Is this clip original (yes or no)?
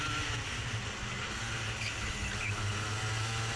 yes